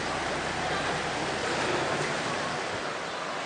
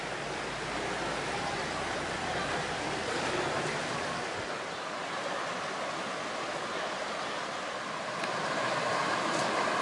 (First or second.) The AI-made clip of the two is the second